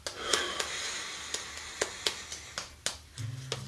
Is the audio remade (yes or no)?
no